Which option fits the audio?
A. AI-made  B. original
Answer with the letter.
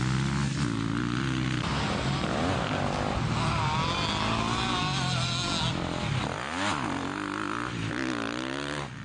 B